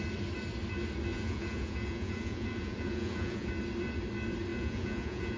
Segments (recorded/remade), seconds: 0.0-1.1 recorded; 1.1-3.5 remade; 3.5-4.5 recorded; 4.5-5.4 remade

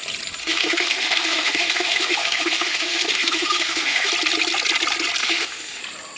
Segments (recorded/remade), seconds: 0.0-0.4 recorded; 0.4-4.1 remade; 4.1-5.2 recorded; 5.2-5.8 remade; 5.8-6.2 recorded

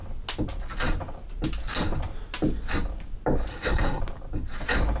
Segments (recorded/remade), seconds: 0.0-3.5 recorded; 3.5-4.0 remade; 4.0-5.0 recorded

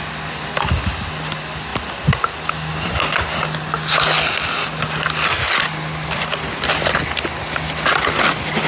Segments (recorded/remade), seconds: 0.0-8.7 recorded

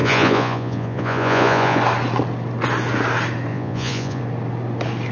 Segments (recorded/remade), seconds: 0.0-1.8 remade; 1.8-3.5 recorded; 3.5-4.2 remade; 4.2-5.1 recorded

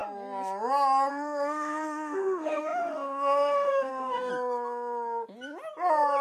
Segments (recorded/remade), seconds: 0.0-1.1 recorded; 1.1-4.3 remade; 4.3-6.2 recorded